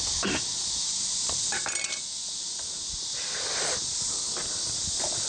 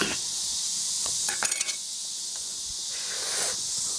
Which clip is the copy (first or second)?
second